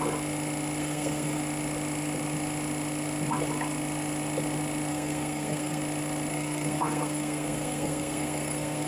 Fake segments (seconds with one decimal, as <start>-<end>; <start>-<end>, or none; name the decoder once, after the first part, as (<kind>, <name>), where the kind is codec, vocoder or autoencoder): 0.8-1.4 (codec, SNAC); 4.9-5.8; 6.3-8.9